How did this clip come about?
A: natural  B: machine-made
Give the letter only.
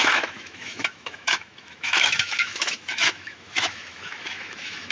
B